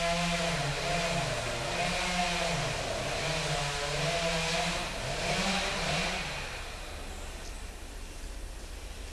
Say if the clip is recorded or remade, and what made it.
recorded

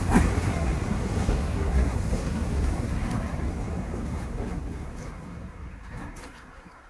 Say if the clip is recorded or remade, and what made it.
remade, codec, SNAC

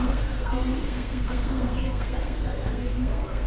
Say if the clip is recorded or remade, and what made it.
remade, codec, SNAC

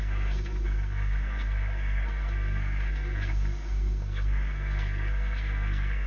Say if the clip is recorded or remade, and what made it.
remade, codec, SNAC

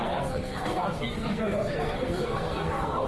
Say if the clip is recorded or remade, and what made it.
remade, codec, SNAC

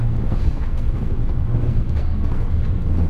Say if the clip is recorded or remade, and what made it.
remade, codec, SNAC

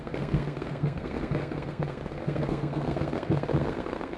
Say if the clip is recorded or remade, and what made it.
remade, codec, SNAC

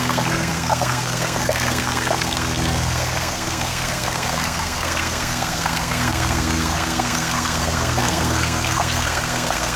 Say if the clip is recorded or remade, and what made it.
remade, codec, SNAC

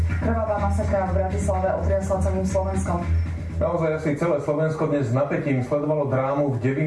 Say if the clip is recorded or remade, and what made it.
recorded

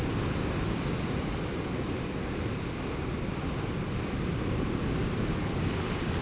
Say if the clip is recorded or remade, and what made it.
recorded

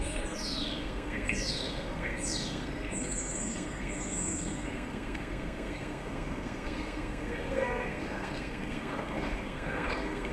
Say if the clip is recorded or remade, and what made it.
remade, codec, SNAC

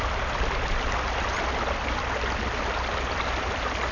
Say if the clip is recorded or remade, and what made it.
recorded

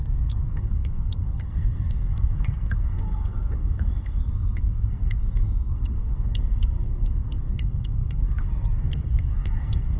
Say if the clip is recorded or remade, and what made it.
remade, codec, SNAC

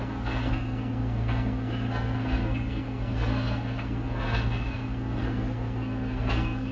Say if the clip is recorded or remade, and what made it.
remade, codec, SNAC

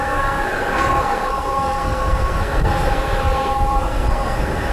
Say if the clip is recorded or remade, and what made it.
remade, codec, SNAC